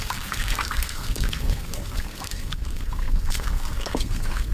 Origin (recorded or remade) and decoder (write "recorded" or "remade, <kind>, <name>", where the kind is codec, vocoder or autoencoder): remade, codec, SNAC